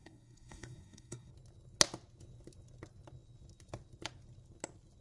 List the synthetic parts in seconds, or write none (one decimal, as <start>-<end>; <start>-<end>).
0.0-1.3